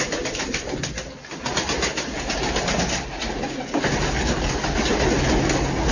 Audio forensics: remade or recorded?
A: recorded